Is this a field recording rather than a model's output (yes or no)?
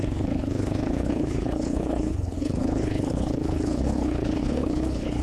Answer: no